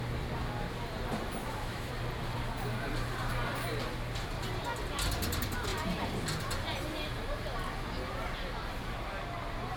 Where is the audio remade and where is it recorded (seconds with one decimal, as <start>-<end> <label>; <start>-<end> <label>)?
0.0-1.4 recorded; 1.4-1.9 remade; 1.9-9.8 recorded